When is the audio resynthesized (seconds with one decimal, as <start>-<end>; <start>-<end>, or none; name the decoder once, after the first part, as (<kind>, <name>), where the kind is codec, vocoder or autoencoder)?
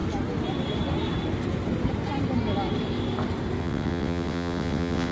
3.6-5.1 (vocoder, WaveNeXt)